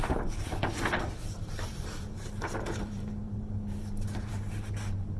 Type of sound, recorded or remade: remade